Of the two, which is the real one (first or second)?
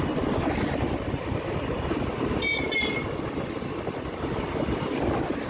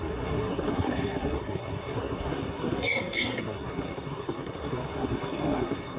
first